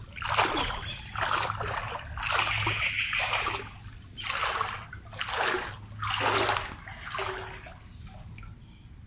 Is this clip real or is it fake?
real